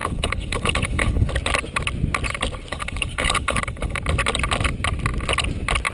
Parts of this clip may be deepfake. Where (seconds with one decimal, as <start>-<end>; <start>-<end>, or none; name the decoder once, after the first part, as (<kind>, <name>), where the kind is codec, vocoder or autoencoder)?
0.0-1.3 (codec, HILCodec); 2.7-4.0

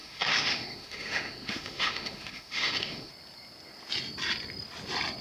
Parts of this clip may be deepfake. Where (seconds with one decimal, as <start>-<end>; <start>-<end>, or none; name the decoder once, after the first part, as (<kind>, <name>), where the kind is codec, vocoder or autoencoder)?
0.0-3.1 (autoencoder, DAC-VAE)

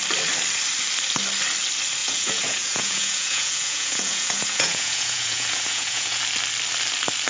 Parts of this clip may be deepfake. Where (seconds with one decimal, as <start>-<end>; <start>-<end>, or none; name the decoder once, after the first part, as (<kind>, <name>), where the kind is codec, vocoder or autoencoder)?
2.0-6.2 (vocoder, Vocos)

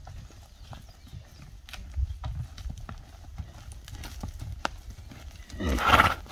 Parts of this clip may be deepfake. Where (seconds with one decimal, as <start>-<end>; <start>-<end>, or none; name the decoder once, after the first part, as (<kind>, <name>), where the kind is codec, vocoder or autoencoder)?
none

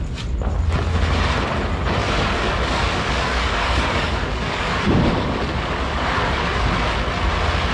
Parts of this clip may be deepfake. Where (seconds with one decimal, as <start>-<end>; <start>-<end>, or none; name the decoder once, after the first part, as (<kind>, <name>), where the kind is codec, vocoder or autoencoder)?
2.0-6.6 (codec, DAC)